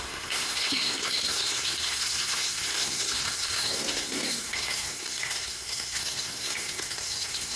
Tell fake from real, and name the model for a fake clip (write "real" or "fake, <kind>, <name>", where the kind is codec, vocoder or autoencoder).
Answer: fake, codec, SNAC